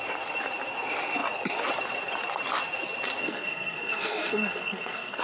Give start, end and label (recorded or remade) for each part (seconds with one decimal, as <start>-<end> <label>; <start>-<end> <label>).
0.0-3.2 recorded; 3.2-5.2 remade